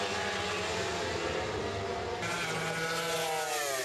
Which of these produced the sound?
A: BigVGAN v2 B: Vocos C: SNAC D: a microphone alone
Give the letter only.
D